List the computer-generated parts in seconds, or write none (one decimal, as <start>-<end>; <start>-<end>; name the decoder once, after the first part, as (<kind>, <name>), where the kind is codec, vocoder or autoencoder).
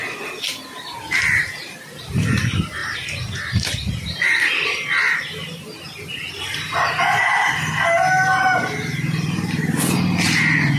none